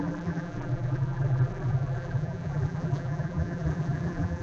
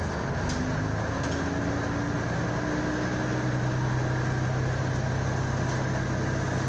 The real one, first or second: second